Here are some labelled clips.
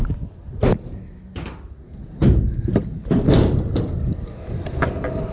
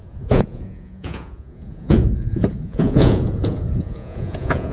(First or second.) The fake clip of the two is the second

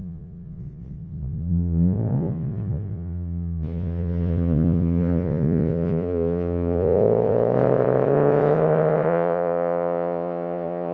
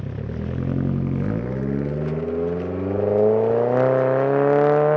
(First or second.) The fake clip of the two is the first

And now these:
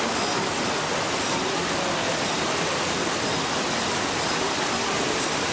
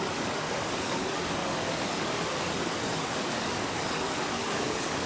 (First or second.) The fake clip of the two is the second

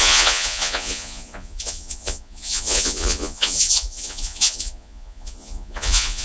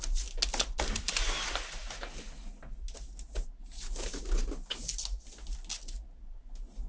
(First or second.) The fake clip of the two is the first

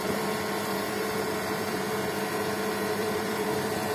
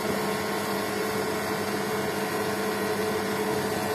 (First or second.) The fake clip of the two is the first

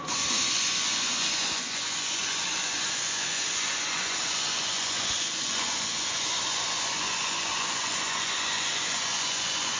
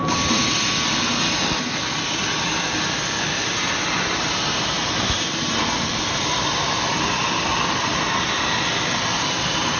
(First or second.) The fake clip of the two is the first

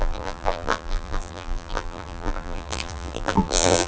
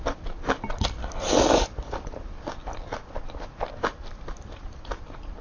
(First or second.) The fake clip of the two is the first